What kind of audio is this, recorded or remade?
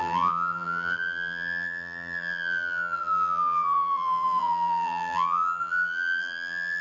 remade